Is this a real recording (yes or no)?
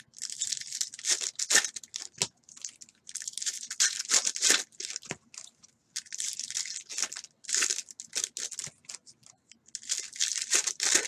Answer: yes